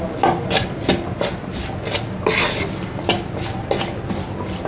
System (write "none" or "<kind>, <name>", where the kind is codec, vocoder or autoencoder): none